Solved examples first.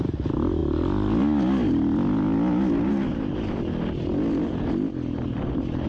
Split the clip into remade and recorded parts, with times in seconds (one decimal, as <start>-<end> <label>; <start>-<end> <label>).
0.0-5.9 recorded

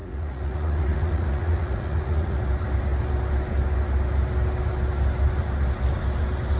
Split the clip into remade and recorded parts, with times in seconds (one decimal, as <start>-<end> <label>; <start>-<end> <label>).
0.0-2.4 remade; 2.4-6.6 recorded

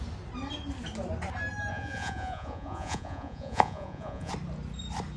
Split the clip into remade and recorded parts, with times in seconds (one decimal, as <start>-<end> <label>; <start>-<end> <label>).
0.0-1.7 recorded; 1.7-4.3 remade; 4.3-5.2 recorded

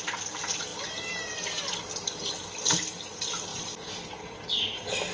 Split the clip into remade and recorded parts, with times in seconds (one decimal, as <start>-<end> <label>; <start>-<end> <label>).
0.0-5.1 recorded

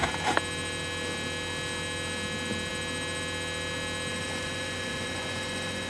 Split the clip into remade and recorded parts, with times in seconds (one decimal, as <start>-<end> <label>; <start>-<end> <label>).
0.0-4.1 recorded; 4.1-5.9 remade

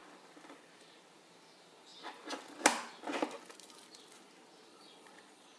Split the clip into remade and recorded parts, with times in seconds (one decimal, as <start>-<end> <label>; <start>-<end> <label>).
0.0-4.7 recorded; 4.7-5.6 remade